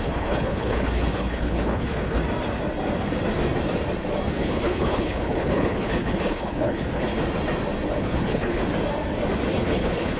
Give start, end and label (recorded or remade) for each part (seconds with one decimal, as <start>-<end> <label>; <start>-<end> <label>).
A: 0.0-2.2 remade; 2.2-4.3 recorded; 4.3-7.1 remade; 7.1-8.0 recorded; 8.0-8.6 remade; 8.6-9.5 recorded; 9.5-10.2 remade